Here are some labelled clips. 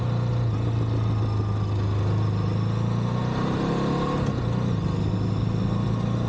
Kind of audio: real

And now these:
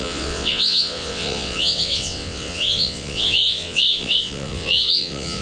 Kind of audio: fake